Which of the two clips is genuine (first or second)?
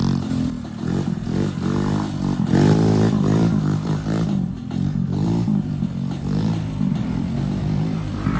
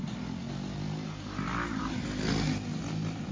second